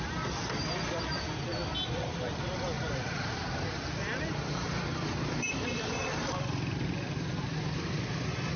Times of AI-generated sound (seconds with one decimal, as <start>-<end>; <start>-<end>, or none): none